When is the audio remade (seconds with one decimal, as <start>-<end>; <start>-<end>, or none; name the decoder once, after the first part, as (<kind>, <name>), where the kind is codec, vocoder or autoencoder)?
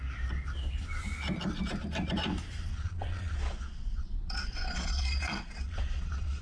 2.7-6.4 (vocoder, Vocos)